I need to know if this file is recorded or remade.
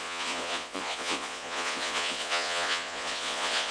remade